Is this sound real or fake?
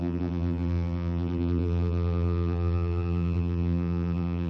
fake